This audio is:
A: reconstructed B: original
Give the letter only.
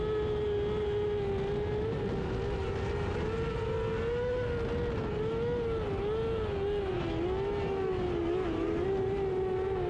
B